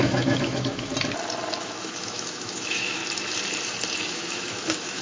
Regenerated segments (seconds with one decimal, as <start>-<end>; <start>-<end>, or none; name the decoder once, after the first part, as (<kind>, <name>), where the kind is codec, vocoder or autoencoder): 0.0-0.9 (autoencoder, DAC-VAE); 1.6-3.0; 4.1-5.0